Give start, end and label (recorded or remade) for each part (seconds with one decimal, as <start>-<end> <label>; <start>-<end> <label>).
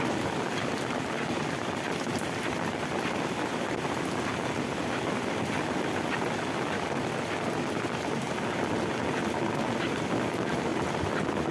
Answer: 0.0-11.5 recorded